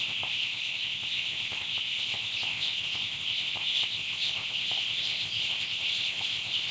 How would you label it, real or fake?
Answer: fake